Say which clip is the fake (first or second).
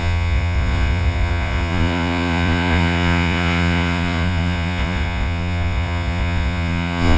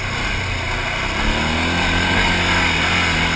first